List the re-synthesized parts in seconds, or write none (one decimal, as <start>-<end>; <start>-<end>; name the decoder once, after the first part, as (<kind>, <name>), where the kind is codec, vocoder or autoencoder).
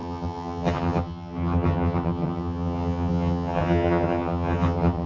0.0-5.1 (vocoder, HiFi-GAN)